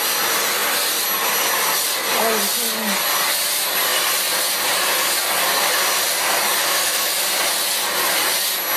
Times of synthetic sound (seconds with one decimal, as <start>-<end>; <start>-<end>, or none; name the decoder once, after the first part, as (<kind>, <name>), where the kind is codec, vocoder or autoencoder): 6.6-7.1 (autoencoder, DAC-VAE)